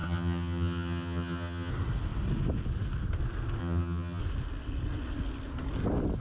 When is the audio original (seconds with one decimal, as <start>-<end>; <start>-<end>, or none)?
1.7-3.6; 4.2-6.2